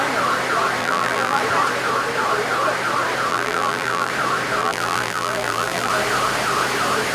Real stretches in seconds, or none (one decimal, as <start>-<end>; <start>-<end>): 0.0-0.8; 1.4-3.3; 4.1-4.6; 5.9-7.1